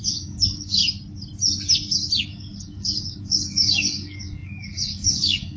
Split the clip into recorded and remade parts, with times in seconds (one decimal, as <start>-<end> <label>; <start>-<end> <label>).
0.0-0.8 remade; 0.8-2.2 recorded; 2.2-5.6 remade